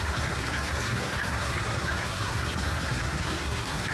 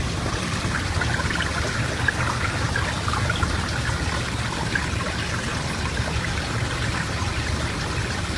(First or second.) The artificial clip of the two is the first